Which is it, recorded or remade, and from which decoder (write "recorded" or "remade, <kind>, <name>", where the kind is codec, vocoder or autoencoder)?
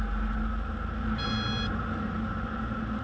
recorded